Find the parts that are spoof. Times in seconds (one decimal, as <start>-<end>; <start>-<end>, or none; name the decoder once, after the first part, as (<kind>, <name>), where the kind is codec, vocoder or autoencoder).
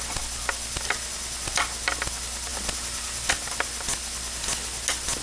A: none